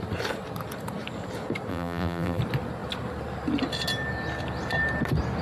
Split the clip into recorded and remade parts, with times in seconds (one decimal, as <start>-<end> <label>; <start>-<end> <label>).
0.0-1.7 recorded; 1.7-2.4 remade; 2.4-5.4 recorded